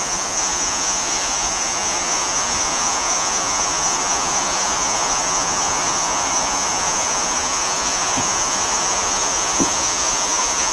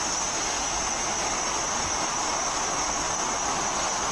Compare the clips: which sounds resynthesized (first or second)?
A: first